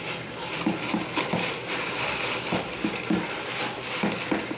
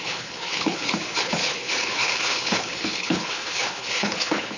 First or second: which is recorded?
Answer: first